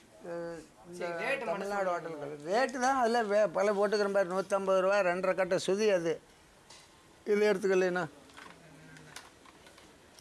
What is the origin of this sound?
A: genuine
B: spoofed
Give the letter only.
A